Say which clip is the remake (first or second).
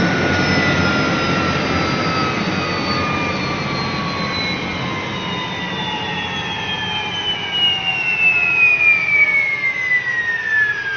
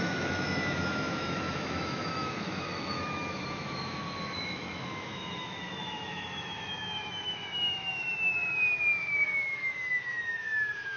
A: second